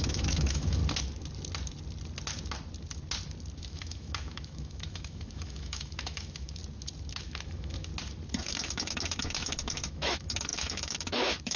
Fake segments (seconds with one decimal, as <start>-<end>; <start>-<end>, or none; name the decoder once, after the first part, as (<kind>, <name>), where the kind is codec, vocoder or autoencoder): 0.0-0.8 (autoencoder, DAC-VAE); 3.6-6.6; 7.1-7.9; 8.4-11.6